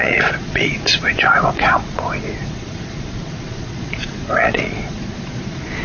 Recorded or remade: remade